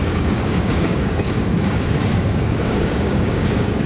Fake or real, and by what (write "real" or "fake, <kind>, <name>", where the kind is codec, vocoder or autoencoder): fake, codec, DAC